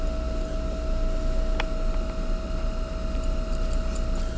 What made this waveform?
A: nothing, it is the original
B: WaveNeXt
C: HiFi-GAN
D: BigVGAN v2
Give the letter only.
A